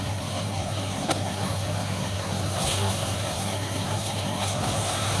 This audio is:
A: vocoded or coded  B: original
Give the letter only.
A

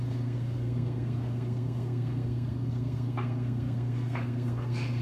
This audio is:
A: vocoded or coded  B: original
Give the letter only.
A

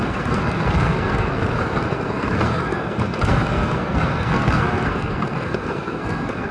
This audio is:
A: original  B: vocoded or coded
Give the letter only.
B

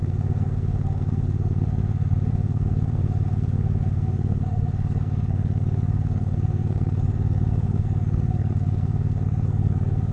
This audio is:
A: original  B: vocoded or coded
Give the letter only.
B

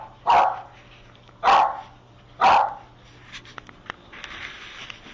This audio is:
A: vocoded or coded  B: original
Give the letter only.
B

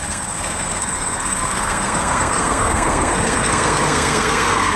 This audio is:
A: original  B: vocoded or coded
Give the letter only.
B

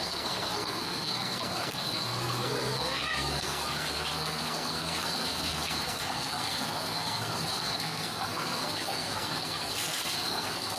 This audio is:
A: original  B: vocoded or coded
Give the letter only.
B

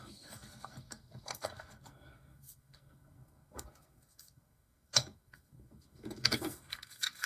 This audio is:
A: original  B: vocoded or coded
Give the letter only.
B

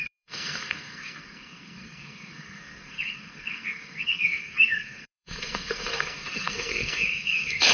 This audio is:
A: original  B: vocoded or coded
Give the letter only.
B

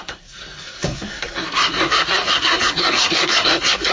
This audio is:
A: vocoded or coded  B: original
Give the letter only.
A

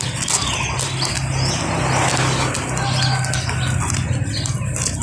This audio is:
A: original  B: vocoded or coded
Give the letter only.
A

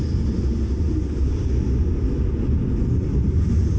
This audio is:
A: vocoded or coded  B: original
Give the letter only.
B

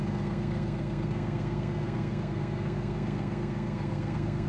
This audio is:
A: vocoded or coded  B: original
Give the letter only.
A